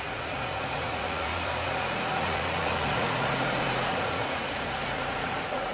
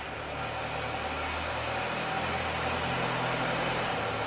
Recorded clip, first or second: second